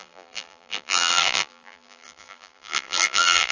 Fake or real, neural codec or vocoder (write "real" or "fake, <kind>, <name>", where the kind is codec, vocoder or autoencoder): fake, vocoder, BigVGAN v2